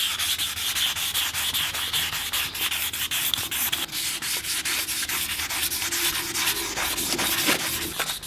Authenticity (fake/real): real